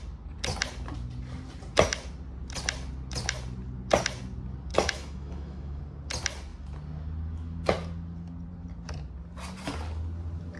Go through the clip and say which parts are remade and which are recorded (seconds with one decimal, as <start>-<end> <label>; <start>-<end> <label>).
0.0-4.7 recorded; 4.7-5.8 remade; 5.8-10.6 recorded